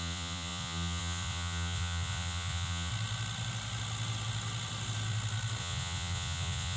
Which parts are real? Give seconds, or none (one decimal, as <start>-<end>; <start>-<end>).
2.9-5.6